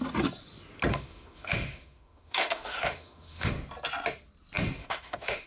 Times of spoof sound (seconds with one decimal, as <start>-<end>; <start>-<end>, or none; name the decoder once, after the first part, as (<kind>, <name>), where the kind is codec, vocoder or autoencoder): 0.9-3.5 (autoencoder, DAC-VAE); 4.8-5.5